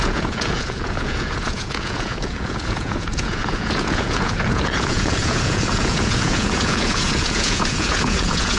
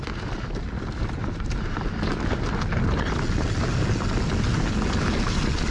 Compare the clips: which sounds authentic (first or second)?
second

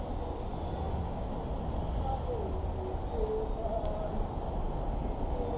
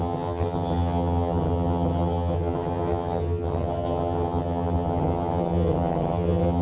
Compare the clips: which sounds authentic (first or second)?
first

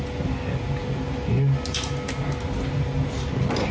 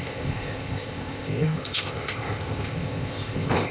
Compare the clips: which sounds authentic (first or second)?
first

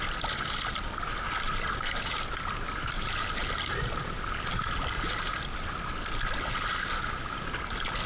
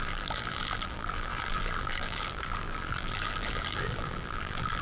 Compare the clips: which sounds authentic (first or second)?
first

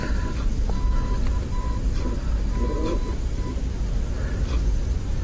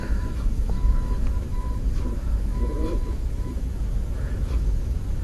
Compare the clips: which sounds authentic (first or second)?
first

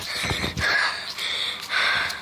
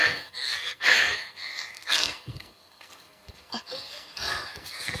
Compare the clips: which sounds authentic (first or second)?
first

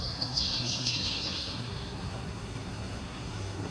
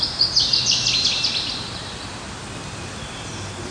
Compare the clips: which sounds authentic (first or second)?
second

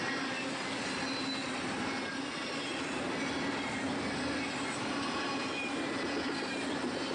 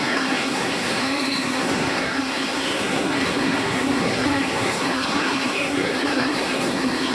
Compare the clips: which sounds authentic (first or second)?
first